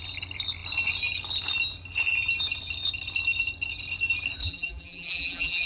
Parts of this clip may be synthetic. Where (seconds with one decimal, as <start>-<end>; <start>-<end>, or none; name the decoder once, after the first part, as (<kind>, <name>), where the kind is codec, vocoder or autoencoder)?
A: 4.4-5.7 (vocoder, BigVGAN v2)